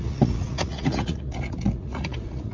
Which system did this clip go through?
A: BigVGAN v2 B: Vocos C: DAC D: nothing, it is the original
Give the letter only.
B